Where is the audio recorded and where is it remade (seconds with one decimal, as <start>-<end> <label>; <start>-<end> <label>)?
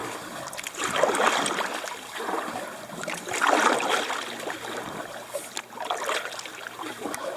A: 0.0-6.5 recorded; 6.5-7.4 remade